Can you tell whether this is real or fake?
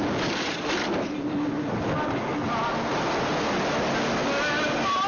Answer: real